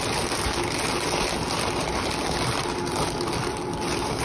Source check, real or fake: real